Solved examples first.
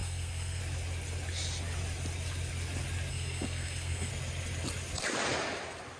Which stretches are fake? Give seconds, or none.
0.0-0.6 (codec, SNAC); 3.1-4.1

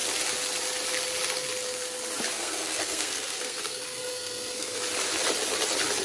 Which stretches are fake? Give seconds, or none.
2.3-4.8 (codec, SNAC)

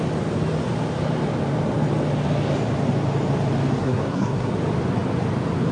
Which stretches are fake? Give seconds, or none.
3.8-4.5 (codec, SNAC)